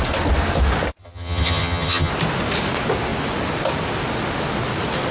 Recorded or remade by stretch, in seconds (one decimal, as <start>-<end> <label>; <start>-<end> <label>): 0.0-1.0 recorded; 1.0-2.1 remade; 2.1-5.1 recorded